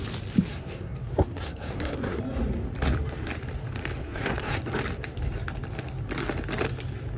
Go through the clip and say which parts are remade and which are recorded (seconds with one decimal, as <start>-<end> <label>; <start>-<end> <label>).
0.0-0.5 recorded; 0.5-2.2 remade; 2.2-4.0 recorded; 4.0-4.6 remade; 4.6-7.2 recorded